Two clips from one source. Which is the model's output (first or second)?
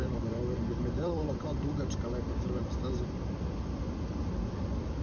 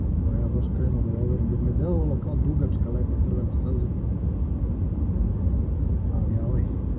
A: first